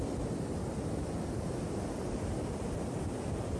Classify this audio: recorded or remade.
recorded